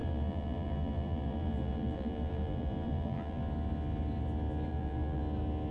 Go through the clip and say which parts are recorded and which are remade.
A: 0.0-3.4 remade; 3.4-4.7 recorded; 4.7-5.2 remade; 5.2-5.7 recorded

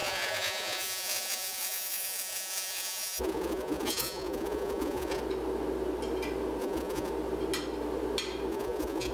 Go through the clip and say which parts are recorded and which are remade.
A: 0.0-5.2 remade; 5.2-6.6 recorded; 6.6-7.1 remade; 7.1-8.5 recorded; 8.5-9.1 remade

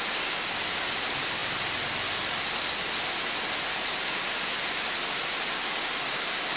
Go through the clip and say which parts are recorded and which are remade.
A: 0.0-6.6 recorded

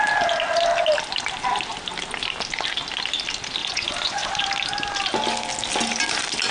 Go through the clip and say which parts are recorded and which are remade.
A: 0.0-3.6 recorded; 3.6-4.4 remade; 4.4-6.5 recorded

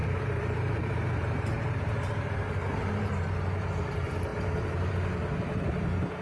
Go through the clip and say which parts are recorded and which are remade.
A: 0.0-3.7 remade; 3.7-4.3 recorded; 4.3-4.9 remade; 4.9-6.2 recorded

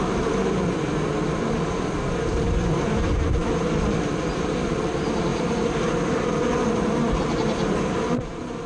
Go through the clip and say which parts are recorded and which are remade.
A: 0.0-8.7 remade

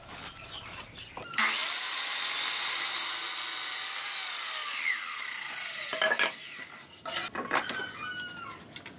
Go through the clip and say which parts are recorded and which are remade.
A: 0.0-9.0 recorded

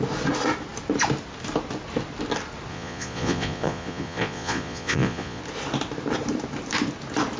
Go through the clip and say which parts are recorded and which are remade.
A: 0.0-2.7 recorded; 2.7-5.4 remade; 5.4-7.4 recorded